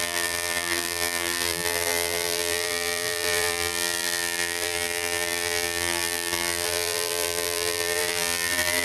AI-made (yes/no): yes